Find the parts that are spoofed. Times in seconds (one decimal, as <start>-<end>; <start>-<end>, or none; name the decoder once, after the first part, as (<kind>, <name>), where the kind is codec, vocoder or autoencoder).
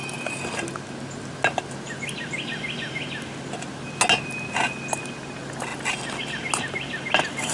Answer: none